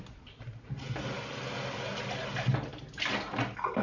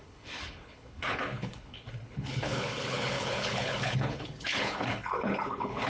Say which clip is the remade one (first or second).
second